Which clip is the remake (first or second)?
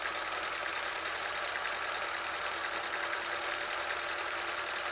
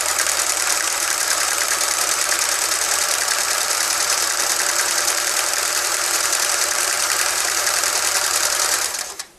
second